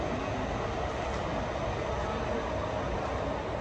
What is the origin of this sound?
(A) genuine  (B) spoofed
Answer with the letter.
A